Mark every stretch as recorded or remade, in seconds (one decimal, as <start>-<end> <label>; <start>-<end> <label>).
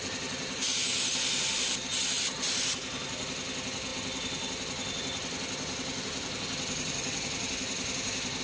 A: 0.0-8.4 recorded